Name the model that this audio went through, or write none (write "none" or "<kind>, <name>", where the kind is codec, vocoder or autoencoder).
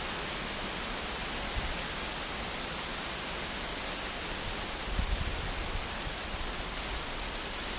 none